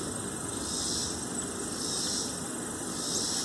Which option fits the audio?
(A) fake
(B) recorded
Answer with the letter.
A